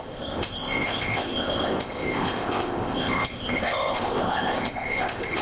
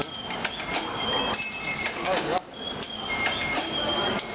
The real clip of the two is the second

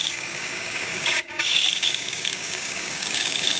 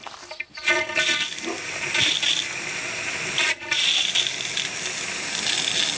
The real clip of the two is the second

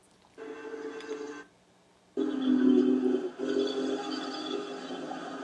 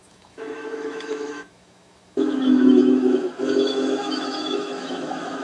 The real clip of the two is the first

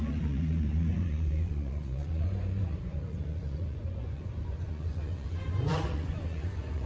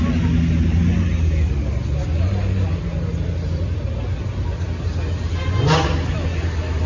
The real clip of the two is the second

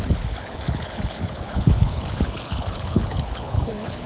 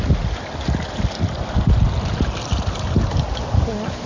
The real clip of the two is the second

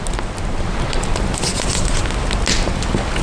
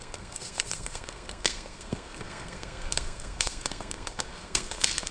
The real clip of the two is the first